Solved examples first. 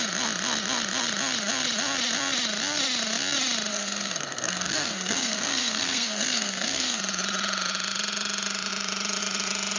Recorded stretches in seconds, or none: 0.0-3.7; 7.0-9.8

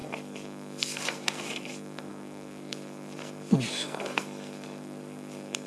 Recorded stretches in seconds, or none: none

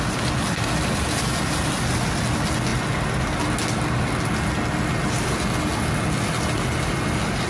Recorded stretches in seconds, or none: 0.0-7.5

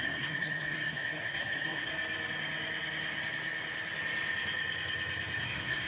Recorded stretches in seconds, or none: 1.9-5.4

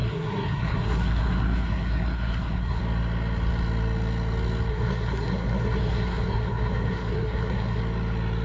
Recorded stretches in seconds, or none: 2.8-4.7; 7.8-8.4